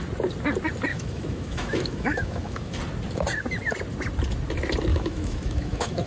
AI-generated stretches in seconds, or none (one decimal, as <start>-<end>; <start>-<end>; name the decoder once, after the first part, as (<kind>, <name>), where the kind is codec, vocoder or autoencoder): 0.9-2.8 (autoencoder, DAC-VAE); 4.9-6.1